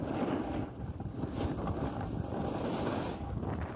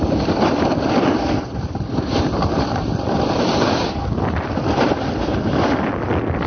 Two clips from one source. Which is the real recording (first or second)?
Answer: first